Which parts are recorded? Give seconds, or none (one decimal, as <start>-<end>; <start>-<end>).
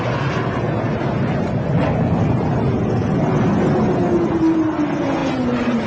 0.0-5.9